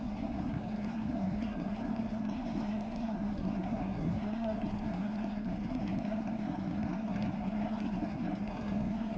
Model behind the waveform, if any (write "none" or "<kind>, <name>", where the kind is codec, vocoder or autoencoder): codec, SNAC